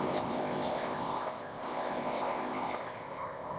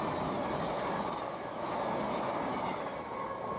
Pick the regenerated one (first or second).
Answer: first